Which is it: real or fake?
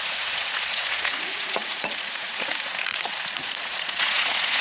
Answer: fake